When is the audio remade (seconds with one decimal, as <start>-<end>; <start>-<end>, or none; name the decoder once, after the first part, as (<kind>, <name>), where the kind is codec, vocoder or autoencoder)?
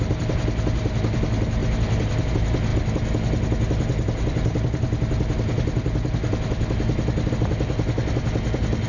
none